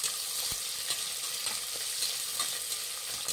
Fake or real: real